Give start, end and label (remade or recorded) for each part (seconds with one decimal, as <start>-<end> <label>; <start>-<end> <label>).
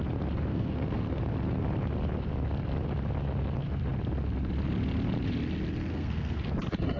0.0-0.5 recorded; 0.5-1.2 remade; 1.2-5.9 recorded; 5.9-6.4 remade; 6.4-7.0 recorded